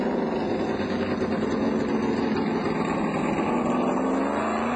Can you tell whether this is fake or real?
real